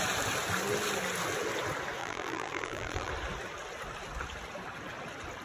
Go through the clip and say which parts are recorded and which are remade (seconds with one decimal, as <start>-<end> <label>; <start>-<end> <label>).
0.0-2.0 recorded; 2.0-3.1 remade; 3.1-5.4 recorded